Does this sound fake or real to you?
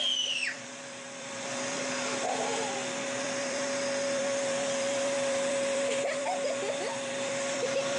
fake